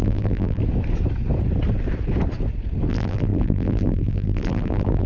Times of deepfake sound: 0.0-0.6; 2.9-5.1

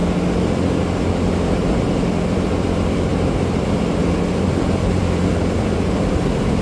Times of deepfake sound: 0.8-3.1; 4.5-6.6

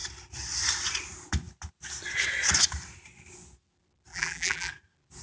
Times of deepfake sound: 4.1-4.7